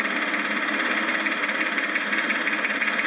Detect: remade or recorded recorded